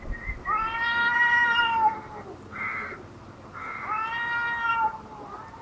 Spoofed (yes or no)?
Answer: yes